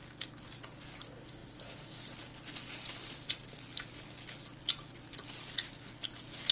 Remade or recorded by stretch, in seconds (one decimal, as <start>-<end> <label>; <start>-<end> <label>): 0.0-6.5 recorded

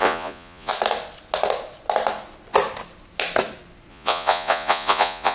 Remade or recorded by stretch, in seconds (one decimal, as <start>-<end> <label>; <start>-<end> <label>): 0.0-0.7 remade; 0.7-3.9 recorded; 3.9-5.3 remade

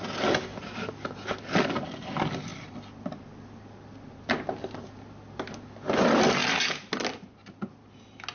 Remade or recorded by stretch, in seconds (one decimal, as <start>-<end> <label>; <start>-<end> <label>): 0.0-8.3 recorded

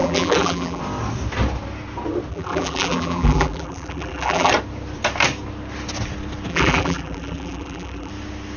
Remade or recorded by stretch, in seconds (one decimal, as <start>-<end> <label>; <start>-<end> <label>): 0.0-0.8 remade; 0.8-2.3 recorded; 2.3-4.5 remade; 4.5-6.5 recorded; 6.5-8.1 remade; 8.1-8.6 recorded

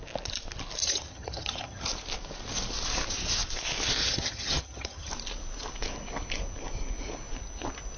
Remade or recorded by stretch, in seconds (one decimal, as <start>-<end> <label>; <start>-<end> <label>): 0.0-0.8 recorded; 0.8-1.9 remade; 1.9-4.0 recorded; 4.0-5.1 remade; 5.1-8.0 recorded

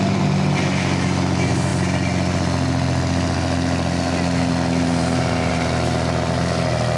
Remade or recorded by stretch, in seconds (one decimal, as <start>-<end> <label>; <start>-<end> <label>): 0.0-7.0 recorded